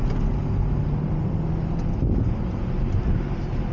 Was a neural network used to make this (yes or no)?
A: no